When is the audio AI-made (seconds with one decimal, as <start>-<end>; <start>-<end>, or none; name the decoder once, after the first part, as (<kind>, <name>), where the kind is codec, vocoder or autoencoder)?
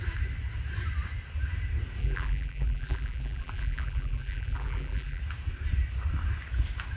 2.0-5.2 (vocoder, BigVGAN v2)